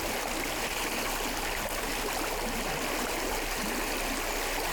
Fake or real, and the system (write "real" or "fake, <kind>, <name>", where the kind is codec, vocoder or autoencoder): real